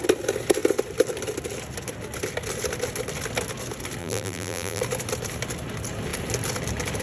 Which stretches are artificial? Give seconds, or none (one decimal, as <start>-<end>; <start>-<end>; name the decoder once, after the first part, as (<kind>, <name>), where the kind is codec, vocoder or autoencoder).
4.0-4.8 (vocoder, BigVGAN v2)